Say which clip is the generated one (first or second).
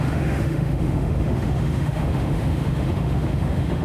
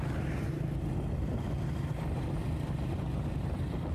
first